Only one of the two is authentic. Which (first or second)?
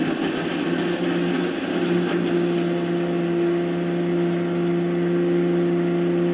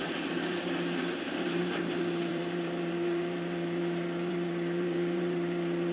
first